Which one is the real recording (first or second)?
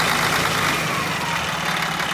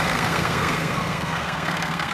first